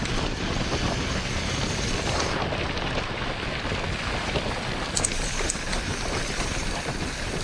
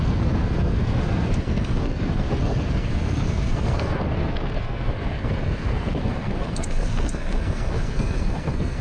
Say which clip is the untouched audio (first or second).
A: first